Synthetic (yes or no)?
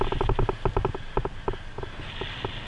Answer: no